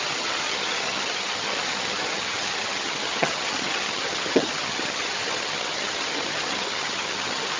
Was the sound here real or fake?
fake